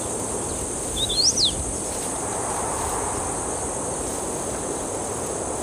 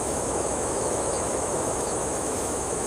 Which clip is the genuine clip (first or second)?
first